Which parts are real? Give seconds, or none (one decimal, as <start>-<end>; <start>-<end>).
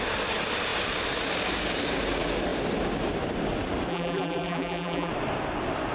0.0-3.9; 5.1-5.9